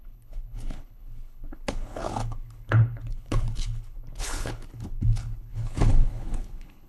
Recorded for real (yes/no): no